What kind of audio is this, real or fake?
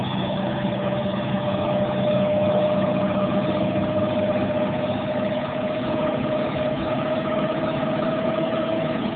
fake